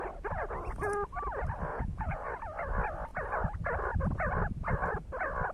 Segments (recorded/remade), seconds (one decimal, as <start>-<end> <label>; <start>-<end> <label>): 0.0-1.7 recorded; 1.7-2.3 remade; 2.3-5.5 recorded